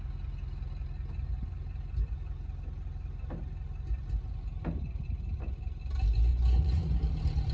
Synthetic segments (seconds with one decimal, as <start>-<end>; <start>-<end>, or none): 6.3-6.8

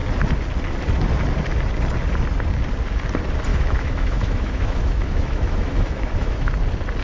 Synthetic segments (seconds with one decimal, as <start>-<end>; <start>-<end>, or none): 3.5-6.5

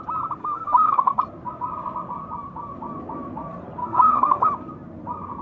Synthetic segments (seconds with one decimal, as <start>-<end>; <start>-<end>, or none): 0.4-1.2; 3.8-4.5

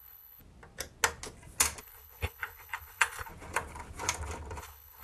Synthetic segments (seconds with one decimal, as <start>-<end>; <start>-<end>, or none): 0.0-0.4; 1.8-3.3; 4.6-5.0

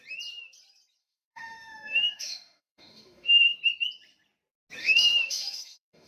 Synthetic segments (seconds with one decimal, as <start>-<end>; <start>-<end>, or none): 1.0-3.6; 4.8-6.1